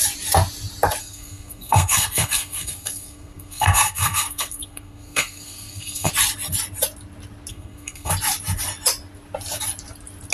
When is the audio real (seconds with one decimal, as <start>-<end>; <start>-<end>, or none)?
0.0-1.0; 6.1-7.5; 8.1-10.3